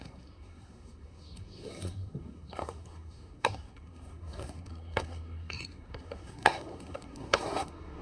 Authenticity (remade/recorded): remade